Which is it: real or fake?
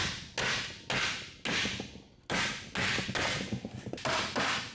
real